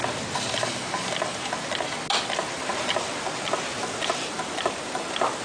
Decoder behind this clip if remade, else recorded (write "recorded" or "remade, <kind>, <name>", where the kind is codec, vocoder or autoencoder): recorded